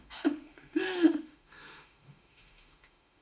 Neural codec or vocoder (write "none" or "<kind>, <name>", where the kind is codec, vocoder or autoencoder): autoencoder, DAC-VAE